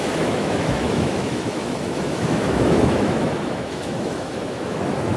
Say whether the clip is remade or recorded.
remade